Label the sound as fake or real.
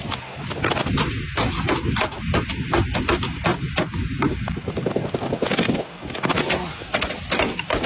real